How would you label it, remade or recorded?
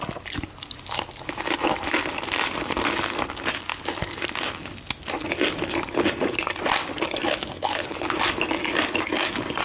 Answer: recorded